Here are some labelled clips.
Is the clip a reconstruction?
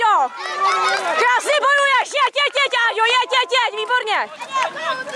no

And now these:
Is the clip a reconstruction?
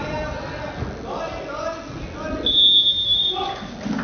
no